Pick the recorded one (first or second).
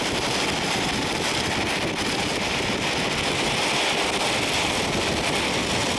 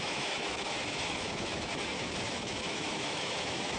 first